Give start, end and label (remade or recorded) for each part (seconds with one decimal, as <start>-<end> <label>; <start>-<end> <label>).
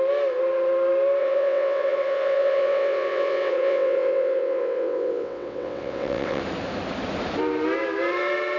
0.0-1.2 recorded; 1.2-6.4 remade; 6.4-8.6 recorded